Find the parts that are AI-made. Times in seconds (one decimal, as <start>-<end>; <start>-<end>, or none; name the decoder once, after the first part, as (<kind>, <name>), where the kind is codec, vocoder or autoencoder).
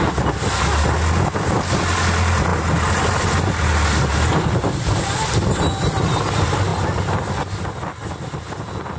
none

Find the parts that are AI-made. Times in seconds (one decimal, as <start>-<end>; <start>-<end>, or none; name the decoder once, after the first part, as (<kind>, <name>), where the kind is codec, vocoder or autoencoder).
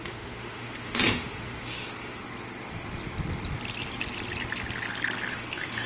0.0-2.2 (autoencoder, DAC-VAE); 5.3-5.9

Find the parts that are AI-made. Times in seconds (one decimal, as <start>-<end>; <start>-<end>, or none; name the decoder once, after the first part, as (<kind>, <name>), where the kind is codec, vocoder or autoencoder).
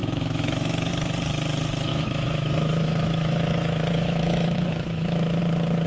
0.0-0.9 (autoencoder, DAC-VAE); 1.9-5.4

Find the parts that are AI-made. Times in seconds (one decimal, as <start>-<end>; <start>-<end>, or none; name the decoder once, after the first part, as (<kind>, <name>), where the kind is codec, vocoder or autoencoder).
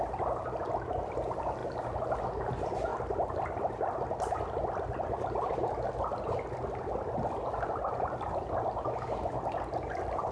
none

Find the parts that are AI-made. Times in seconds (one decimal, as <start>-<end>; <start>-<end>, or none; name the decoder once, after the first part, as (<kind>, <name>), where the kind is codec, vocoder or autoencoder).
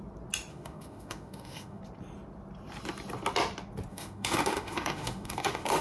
0.5-1.8 (autoencoder, DAC-VAE); 3.9-5.8